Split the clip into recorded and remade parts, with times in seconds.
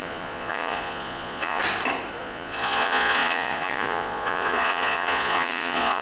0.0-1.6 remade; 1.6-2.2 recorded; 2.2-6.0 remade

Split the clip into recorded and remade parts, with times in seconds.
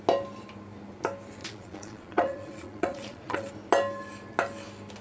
0.0-1.4 recorded; 1.4-3.5 remade; 3.5-5.0 recorded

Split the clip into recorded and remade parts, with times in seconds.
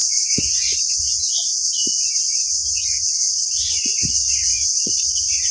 0.0-2.6 recorded; 2.6-3.9 remade; 3.9-4.5 recorded; 4.5-5.5 remade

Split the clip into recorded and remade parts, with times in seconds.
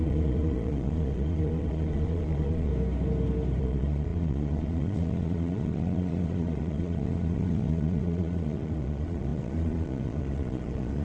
0.0-2.7 remade; 2.7-3.6 recorded; 3.6-11.0 remade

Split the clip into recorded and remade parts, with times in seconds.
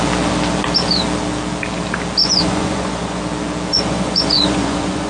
0.0-2.2 recorded; 2.2-3.2 remade; 3.2-3.7 recorded; 3.7-5.1 remade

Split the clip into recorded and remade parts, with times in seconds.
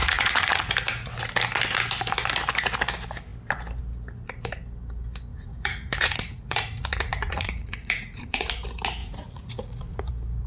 0.0-0.7 remade; 0.7-5.3 recorded; 5.3-8.5 remade; 8.5-9.0 recorded; 9.0-10.1 remade; 10.1-10.5 recorded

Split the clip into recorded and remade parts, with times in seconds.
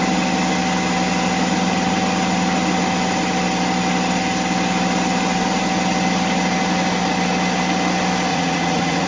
0.0-8.3 recorded; 8.3-9.1 remade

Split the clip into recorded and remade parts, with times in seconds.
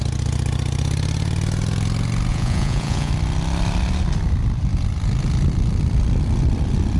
0.0-2.3 recorded; 2.3-3.1 remade; 3.1-7.0 recorded